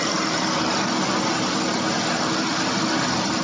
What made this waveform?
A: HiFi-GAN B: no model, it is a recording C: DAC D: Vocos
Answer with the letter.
B